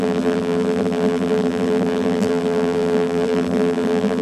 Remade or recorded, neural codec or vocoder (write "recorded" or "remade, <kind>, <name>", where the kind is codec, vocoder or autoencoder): remade, vocoder, BigVGAN v2